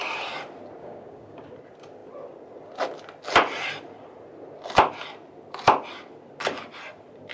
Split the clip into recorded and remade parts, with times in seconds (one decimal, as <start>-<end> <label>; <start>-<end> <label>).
0.0-0.8 recorded; 0.8-1.5 remade; 1.5-7.3 recorded

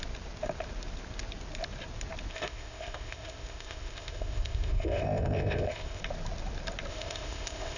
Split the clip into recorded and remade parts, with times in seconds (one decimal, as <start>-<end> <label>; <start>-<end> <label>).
0.0-2.3 recorded; 2.3-6.0 remade; 6.0-6.9 recorded; 6.9-7.8 remade